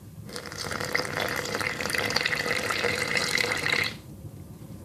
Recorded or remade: remade